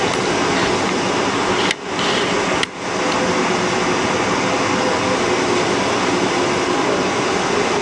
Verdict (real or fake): real